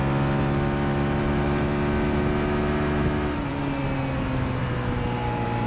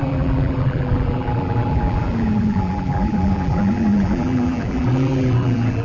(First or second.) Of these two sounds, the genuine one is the first